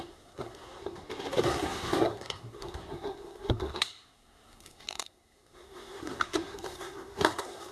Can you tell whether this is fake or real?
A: fake